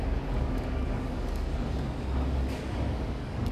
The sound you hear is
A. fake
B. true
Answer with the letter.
A